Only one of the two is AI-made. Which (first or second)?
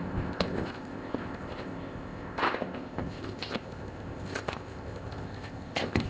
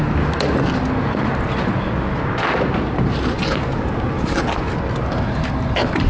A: first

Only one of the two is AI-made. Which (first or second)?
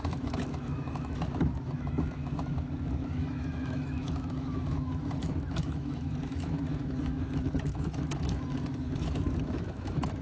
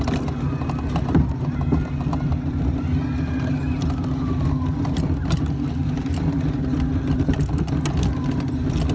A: first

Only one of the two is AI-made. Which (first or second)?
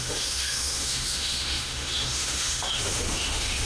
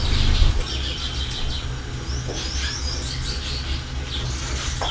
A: first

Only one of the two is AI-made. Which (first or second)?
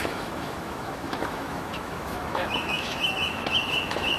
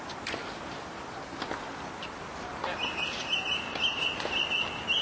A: first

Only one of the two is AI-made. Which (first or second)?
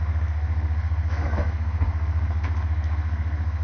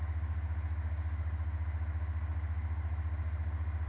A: first